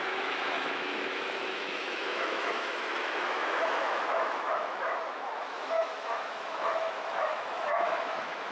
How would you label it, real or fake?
fake